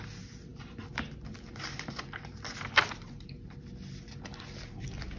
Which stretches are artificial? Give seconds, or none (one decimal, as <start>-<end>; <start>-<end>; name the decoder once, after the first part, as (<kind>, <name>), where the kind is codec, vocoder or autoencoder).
none